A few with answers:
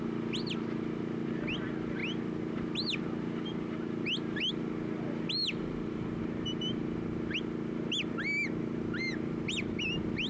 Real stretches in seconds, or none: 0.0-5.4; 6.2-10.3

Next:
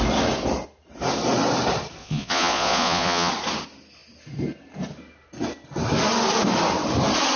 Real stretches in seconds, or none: 0.0-2.0; 3.3-7.4

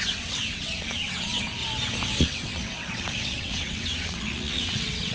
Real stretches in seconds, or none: 1.6-2.2

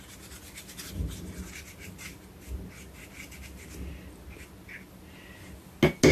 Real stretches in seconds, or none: 0.0-6.1

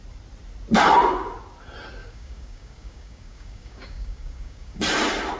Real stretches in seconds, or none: 0.0-2.0; 4.8-5.4

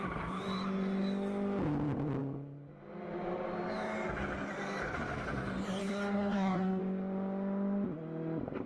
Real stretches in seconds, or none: 0.0-5.8; 6.8-8.7

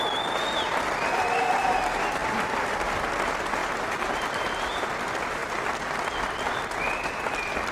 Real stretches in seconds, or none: 0.0-3.6; 4.9-7.7